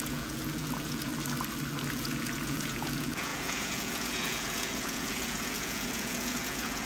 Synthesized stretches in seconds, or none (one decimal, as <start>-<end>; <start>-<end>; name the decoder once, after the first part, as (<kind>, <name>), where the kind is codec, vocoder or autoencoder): 0.0-1.1 (vocoder, Vocos); 1.9-6.9